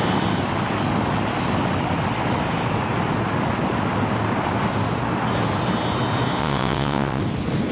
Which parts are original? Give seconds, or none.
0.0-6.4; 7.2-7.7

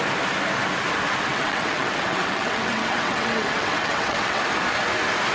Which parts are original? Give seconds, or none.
0.0-1.3; 4.4-5.3

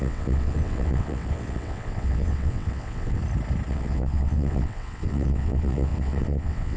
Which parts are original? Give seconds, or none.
3.2-3.7

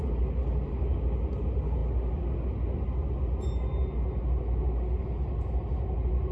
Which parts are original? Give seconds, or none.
0.0-6.3

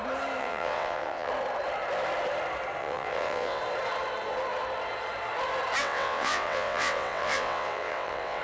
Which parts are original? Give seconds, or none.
0.0-0.4; 1.3-2.8; 3.6-5.8

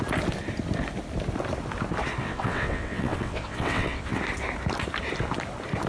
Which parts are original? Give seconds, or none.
0.0-2.2; 4.2-5.9